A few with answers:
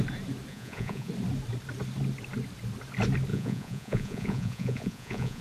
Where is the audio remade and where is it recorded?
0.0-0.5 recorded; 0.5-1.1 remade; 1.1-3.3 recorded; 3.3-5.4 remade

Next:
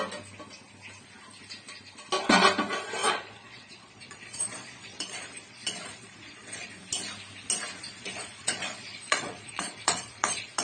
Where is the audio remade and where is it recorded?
0.0-3.0 recorded; 3.0-6.7 remade; 6.7-7.8 recorded; 7.8-10.6 remade